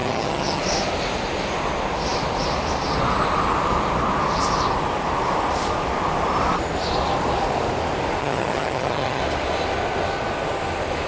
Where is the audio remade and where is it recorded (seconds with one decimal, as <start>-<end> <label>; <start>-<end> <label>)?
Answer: 0.0-0.6 remade; 0.6-8.2 recorded; 8.2-9.2 remade; 9.2-11.1 recorded